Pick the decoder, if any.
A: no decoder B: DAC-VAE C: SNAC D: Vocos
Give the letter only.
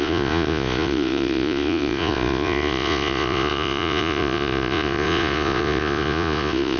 D